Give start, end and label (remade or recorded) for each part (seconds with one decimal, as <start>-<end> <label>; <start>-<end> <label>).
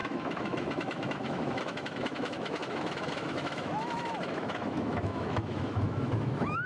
0.0-6.7 remade